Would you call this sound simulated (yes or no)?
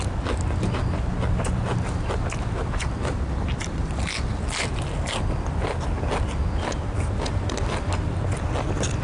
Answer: no